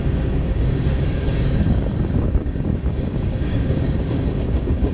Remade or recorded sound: remade